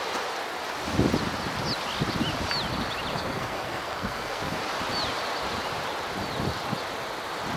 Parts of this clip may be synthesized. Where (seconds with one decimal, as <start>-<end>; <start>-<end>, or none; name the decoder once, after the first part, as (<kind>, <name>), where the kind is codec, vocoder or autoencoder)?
3.1-4.6 (codec, SNAC)